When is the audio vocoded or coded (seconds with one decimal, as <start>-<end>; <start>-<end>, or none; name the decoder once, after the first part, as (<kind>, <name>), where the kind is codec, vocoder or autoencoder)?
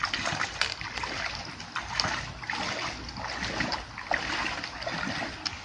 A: none